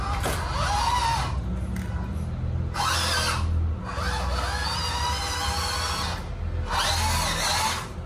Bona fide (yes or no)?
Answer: yes